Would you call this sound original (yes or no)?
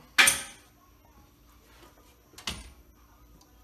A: yes